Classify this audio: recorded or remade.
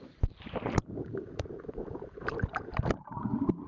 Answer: remade